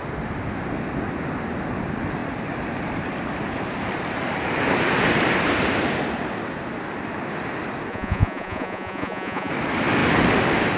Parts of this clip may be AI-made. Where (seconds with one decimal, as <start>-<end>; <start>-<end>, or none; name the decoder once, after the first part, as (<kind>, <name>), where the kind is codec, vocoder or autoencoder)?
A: 7.9-9.5 (vocoder, Vocos)